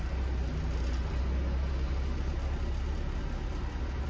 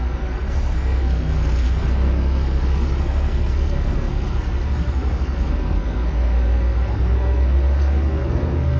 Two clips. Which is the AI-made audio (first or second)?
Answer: second